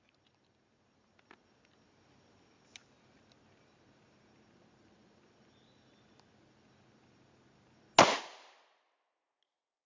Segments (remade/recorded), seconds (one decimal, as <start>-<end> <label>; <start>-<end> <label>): 0.0-9.9 recorded